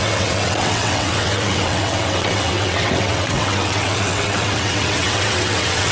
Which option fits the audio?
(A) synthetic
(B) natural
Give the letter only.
A